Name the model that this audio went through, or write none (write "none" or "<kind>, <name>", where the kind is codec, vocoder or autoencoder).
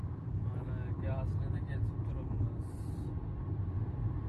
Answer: none